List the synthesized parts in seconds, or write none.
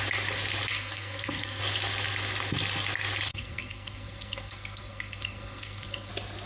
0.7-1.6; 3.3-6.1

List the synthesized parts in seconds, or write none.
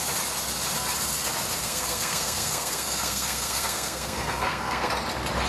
1.6-4.9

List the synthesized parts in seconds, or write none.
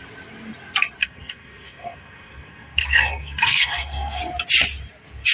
1.0-4.2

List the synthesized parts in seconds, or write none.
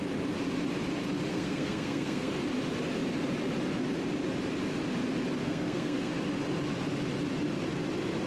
1.3-2.3; 5.4-6.1